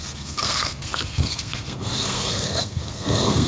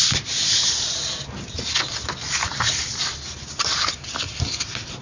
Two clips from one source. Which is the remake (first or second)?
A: first